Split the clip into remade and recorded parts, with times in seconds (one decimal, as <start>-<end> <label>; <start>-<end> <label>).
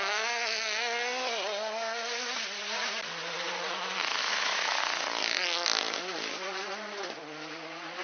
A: 0.0-4.2 recorded; 4.2-4.8 remade; 4.8-8.0 recorded